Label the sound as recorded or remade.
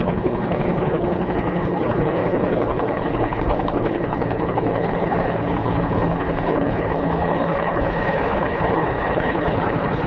remade